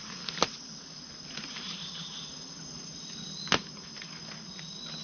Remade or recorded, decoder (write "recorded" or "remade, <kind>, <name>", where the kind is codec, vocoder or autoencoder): recorded